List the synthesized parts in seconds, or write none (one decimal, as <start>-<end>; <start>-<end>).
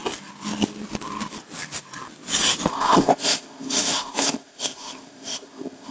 2.7-5.9